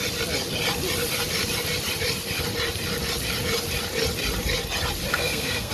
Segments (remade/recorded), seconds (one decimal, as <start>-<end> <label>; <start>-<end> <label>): 0.0-5.1 recorded; 5.1-5.7 remade